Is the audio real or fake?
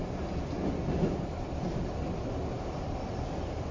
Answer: real